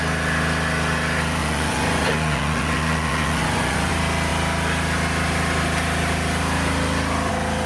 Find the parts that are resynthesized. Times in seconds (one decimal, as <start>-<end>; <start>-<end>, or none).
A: 1.4-3.9